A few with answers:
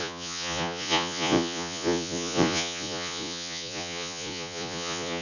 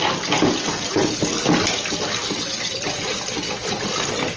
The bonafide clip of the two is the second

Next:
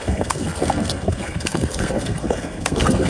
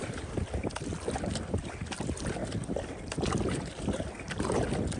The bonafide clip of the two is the second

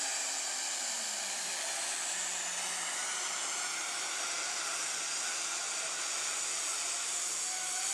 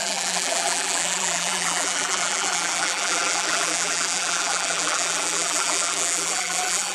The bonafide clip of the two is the first